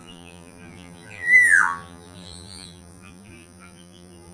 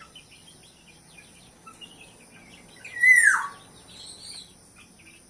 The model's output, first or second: first